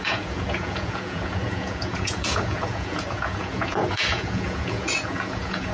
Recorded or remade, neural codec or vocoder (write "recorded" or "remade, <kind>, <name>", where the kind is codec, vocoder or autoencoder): remade, vocoder, Vocos